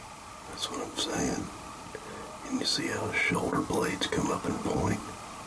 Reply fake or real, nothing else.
real